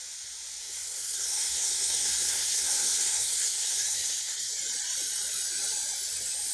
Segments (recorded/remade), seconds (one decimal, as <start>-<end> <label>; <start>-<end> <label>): 0.0-0.6 recorded; 0.6-4.5 remade; 4.5-6.5 recorded